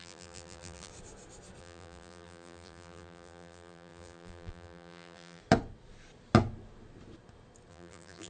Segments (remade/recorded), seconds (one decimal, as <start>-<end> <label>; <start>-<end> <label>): 0.0-0.9 remade; 0.9-1.6 recorded; 1.6-5.4 remade; 5.4-7.7 recorded; 7.7-8.3 remade